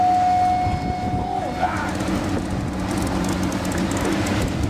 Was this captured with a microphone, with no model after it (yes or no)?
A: yes